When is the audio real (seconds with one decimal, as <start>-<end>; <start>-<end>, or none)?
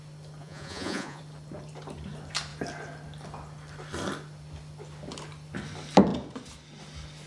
0.0-0.4; 1.2-7.3